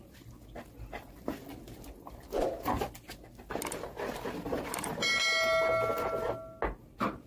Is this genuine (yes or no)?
yes